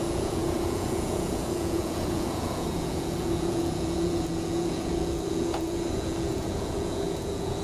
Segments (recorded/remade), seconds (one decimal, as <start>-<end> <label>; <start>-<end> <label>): 0.0-7.6 remade